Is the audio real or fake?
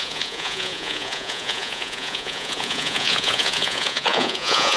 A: fake